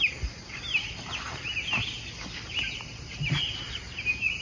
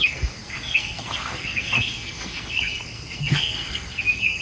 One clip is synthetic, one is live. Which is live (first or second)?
first